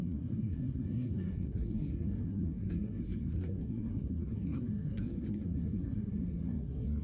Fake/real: fake